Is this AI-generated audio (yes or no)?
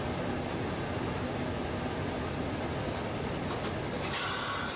no